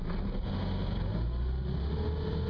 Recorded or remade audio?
recorded